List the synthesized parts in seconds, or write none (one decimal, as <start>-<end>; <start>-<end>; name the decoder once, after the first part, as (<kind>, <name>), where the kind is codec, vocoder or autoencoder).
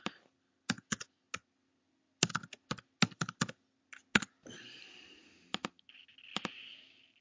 none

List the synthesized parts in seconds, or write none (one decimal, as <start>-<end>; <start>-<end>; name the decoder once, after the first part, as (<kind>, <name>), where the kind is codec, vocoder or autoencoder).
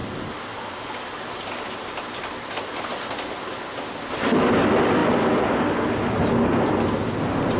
none